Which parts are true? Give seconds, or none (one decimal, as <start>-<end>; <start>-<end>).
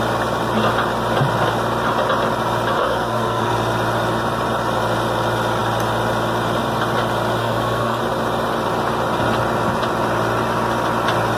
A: 0.0-2.8; 3.5-7.4; 8.0-11.4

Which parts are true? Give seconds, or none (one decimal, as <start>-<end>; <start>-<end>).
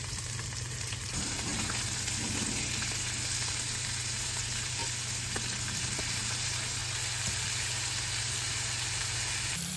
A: 1.5-3.5; 4.8-5.6; 6.8-8.2